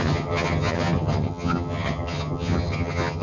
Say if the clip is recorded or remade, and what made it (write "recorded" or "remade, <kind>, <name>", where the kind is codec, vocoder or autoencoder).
remade, vocoder, HiFi-GAN